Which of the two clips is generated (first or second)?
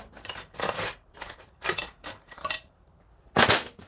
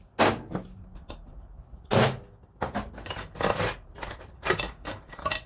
first